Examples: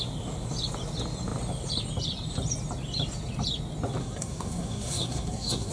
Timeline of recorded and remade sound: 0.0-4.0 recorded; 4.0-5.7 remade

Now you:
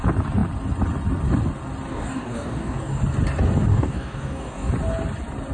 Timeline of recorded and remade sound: 0.0-1.9 recorded; 1.9-3.0 remade; 3.0-3.7 recorded; 3.7-4.7 remade; 4.7-5.5 recorded

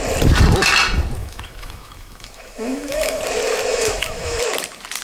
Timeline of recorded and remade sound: 0.0-1.2 recorded; 1.2-3.2 remade; 3.2-3.7 recorded; 3.7-4.4 remade; 4.4-5.0 recorded

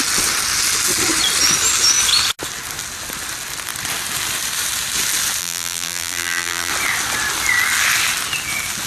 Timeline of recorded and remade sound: 0.0-5.4 recorded; 5.4-6.7 remade; 6.7-8.9 recorded

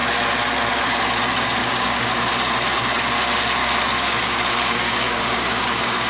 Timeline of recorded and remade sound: 0.0-1.6 recorded; 1.6-2.1 remade; 2.1-3.6 recorded; 3.6-6.1 remade

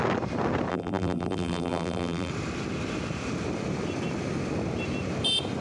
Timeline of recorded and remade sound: 0.0-0.7 recorded; 0.7-2.3 remade; 2.3-5.6 recorded